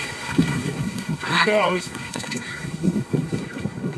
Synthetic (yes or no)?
yes